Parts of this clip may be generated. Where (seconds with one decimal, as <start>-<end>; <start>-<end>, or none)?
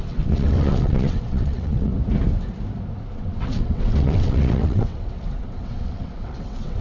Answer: 0.0-1.9; 3.1-6.8